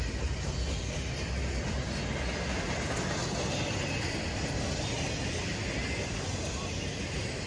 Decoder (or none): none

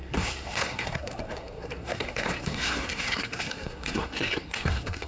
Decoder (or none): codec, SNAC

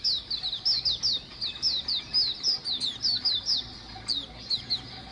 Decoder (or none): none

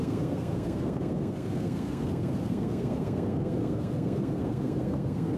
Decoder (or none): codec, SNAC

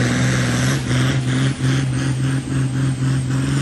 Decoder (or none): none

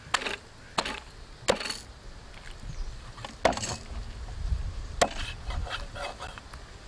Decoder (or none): none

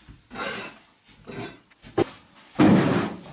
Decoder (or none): none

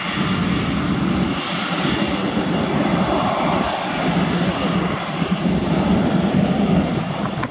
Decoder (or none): none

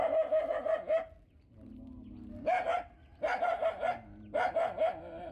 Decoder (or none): none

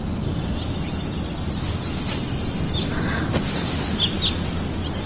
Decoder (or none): none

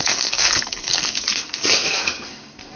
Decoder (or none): codec, SNAC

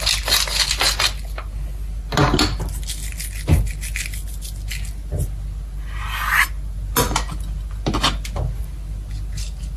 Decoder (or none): none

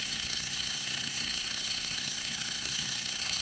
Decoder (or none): codec, SNAC